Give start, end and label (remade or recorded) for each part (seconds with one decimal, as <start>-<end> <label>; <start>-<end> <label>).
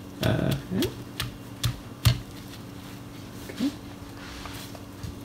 0.0-5.2 recorded